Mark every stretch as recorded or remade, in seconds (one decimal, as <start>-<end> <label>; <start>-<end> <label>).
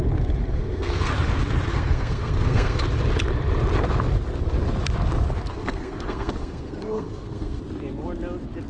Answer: 0.0-0.5 recorded; 0.5-1.1 remade; 1.1-1.7 recorded; 1.7-2.8 remade; 2.8-5.5 recorded; 5.5-7.6 remade; 7.6-8.7 recorded